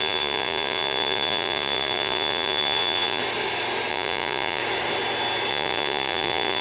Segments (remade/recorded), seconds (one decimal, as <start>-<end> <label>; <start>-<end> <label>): 0.0-3.2 remade; 3.2-3.9 recorded; 3.9-4.6 remade; 4.6-5.5 recorded; 5.5-6.6 remade